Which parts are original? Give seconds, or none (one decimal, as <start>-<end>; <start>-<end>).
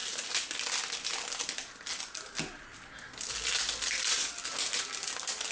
0.0-5.5